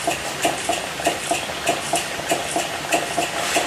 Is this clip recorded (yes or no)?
yes